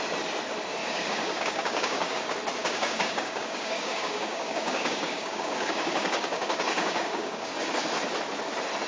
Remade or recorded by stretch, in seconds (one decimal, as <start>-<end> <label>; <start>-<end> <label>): 0.0-0.8 recorded; 0.8-2.2 remade; 2.2-2.6 recorded; 2.6-7.7 remade; 7.7-8.9 recorded